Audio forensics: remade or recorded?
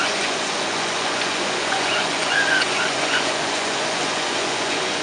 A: remade